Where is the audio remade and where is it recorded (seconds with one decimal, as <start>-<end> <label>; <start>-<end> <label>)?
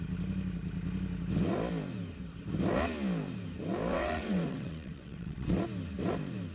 0.0-3.9 recorded; 3.9-5.5 remade; 5.5-6.5 recorded